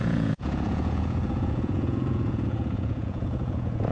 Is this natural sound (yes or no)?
no